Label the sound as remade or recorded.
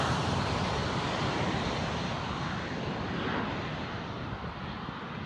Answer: recorded